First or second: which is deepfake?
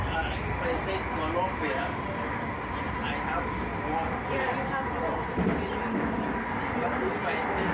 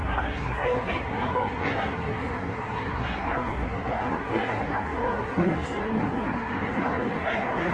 second